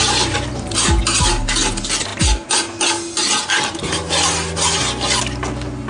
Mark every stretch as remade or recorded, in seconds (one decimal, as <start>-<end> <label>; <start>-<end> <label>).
0.0-5.9 recorded